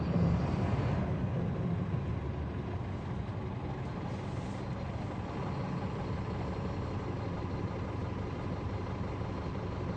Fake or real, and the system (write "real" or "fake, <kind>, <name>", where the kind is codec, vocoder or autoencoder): real